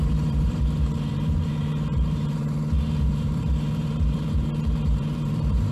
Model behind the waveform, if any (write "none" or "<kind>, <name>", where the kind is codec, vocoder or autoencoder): vocoder, BigVGAN v2